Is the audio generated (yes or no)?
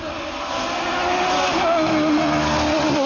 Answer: no